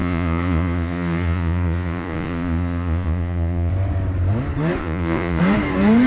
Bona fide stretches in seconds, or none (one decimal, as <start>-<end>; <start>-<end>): 3.7-4.8; 5.4-6.1